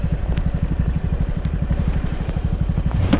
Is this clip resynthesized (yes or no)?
yes